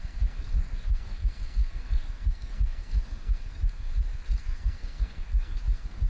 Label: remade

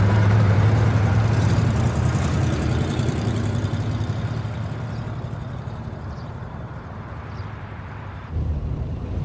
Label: remade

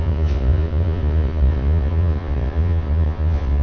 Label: remade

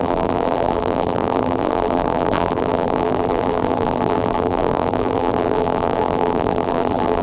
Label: remade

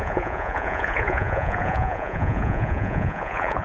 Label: remade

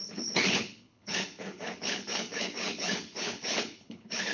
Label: remade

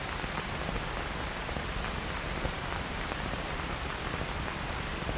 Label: remade